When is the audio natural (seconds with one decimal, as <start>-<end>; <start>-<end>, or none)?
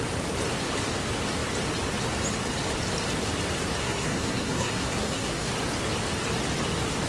0.0-3.8; 5.5-7.1